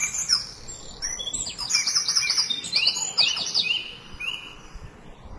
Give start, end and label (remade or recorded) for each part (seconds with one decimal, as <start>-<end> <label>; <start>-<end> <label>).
0.0-1.7 recorded; 1.7-5.4 remade